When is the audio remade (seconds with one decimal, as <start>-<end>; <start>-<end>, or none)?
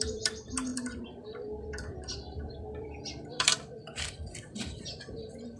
0.0-5.6